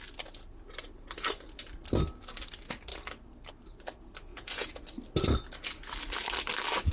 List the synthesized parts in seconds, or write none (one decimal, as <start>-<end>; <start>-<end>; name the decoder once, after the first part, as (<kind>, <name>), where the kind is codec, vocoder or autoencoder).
4.3-4.8 (vocoder, Vocos)